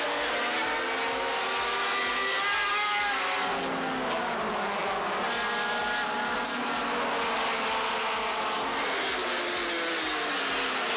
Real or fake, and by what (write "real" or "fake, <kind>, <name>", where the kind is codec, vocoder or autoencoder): real